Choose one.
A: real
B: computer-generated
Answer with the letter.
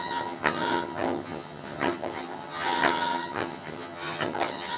B